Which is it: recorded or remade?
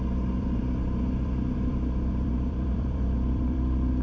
remade